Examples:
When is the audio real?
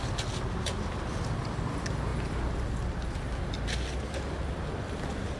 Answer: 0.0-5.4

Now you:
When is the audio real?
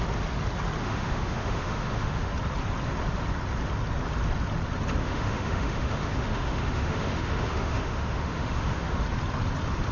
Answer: 0.0-0.8; 2.3-5.0; 9.0-9.9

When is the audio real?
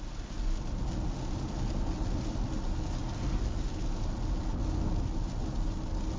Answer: 0.0-6.2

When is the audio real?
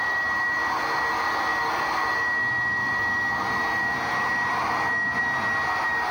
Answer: 0.0-6.1